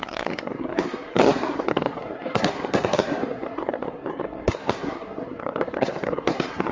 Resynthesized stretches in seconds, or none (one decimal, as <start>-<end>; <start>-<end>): 0.0-6.7